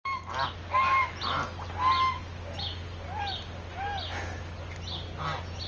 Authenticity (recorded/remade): recorded